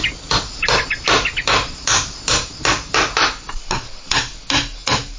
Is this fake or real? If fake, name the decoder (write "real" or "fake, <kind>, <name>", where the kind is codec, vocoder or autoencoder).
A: real